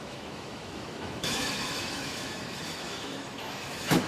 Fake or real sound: fake